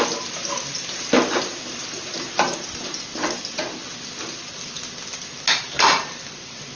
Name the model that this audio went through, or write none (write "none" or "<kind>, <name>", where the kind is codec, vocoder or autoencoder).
none